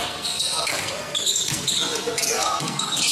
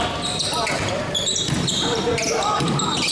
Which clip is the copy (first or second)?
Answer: first